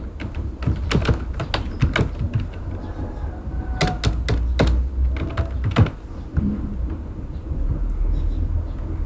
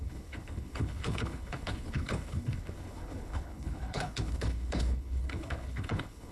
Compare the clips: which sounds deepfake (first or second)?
second